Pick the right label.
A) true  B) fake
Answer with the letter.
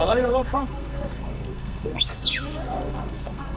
B